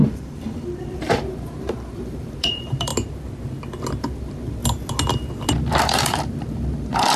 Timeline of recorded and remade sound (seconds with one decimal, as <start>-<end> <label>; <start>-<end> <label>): 0.0-2.9 remade; 2.9-4.0 recorded; 4.0-4.6 remade; 4.6-5.8 recorded; 5.8-7.2 remade